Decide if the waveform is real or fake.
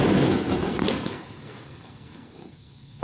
fake